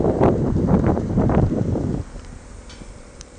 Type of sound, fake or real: fake